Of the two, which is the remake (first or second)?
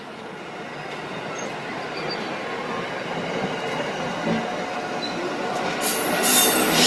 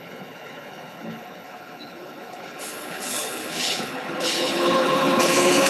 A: second